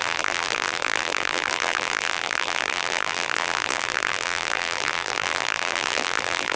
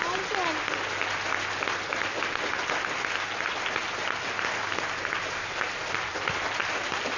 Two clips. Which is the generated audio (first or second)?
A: first